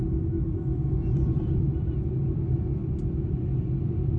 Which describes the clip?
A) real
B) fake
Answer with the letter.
B